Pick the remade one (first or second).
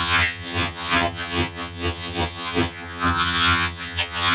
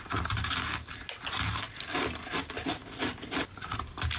first